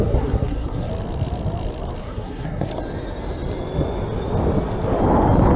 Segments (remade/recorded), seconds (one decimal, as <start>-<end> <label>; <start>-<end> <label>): 0.0-0.9 remade; 0.9-2.0 recorded; 2.0-2.7 remade; 2.7-5.6 recorded